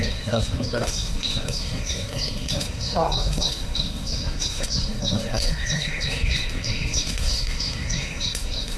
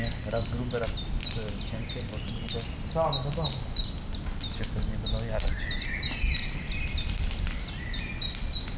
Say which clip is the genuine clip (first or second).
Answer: second